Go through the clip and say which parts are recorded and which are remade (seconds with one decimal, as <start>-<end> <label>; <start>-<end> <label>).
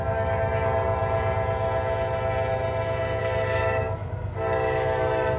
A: 0.0-1.0 remade; 1.0-3.2 recorded; 3.2-5.4 remade